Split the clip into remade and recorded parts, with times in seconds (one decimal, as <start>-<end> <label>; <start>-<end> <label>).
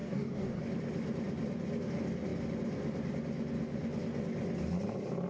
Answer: 0.0-0.6 remade; 0.6-5.3 recorded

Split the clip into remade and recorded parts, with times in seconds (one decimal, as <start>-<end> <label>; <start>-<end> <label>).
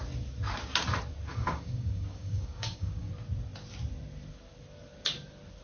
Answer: 0.0-1.3 recorded; 1.3-3.1 remade; 3.1-5.6 recorded